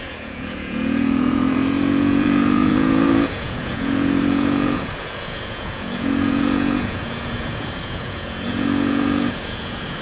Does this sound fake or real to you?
fake